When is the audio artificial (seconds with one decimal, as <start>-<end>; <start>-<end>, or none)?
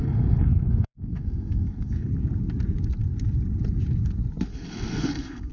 0.0-2.1; 4.5-5.5